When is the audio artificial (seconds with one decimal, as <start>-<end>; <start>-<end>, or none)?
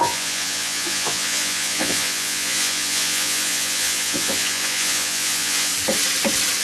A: 0.0-5.7